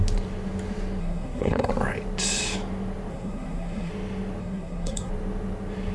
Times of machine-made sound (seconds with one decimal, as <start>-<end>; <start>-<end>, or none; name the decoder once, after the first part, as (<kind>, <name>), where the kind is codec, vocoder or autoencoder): 1.0-1.7 (codec, SNAC); 3.1-3.9; 4.4-5.1